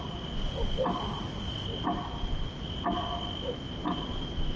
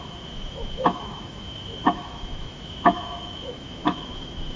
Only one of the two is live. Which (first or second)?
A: first